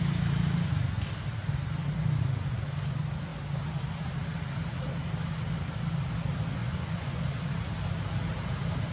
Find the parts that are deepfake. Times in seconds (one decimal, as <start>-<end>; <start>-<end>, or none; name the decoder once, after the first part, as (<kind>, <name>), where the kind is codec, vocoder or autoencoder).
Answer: 6.6-7.2 (vocoder, Vocos)